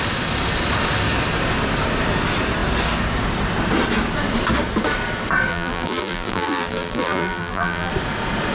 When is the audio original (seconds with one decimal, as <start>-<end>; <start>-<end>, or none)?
0.0-5.5; 7.9-8.5